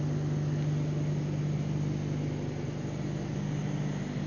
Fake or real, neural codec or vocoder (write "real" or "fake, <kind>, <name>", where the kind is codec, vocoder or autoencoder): real